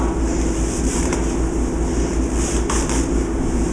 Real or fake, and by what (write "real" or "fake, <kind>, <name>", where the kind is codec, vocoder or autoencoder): real